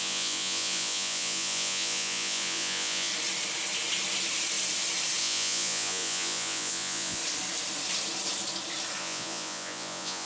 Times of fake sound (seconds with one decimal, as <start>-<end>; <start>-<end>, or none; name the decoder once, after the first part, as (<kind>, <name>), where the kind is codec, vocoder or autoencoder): 0.0-3.1 (vocoder, Vocos); 5.2-7.2; 9.0-10.3